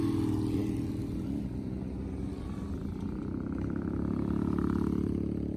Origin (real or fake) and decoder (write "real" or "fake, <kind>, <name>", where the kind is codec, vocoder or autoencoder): real